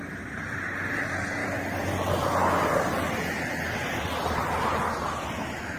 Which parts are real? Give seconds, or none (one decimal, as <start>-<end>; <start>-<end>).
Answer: 0.0-1.4; 4.9-5.8